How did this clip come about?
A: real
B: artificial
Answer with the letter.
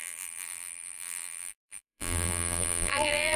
B